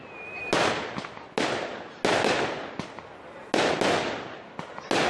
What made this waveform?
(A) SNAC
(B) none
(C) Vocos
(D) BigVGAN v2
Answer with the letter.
B